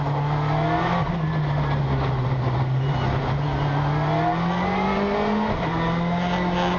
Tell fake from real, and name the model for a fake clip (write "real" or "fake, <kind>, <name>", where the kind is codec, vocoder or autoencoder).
real